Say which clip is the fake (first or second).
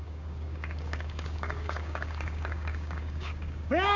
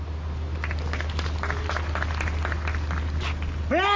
first